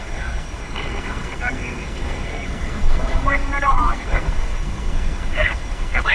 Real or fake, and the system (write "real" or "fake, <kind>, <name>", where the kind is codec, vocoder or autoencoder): fake, codec, SNAC